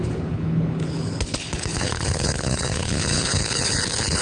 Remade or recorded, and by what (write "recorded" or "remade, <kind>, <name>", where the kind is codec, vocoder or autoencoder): remade, codec, HILCodec